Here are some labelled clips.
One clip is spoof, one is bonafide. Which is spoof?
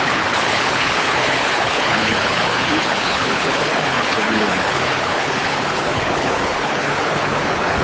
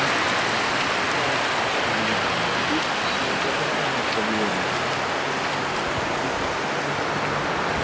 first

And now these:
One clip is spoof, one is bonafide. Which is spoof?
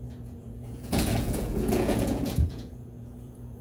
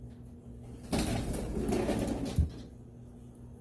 first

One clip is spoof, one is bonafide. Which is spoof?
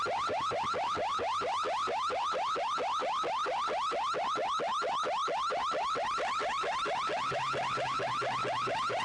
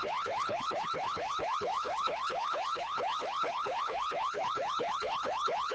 second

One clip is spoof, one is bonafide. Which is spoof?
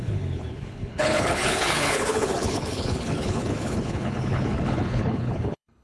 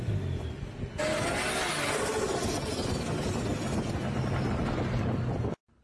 first